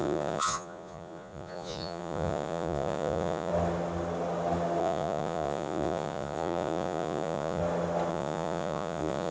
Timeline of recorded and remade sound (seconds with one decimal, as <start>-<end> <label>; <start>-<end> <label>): 0.0-3.5 remade; 3.5-4.8 recorded; 4.8-7.6 remade; 7.6-8.1 recorded; 8.1-9.3 remade